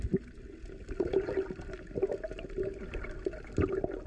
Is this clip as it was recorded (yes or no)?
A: yes